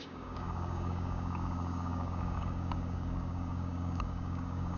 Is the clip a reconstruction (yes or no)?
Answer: yes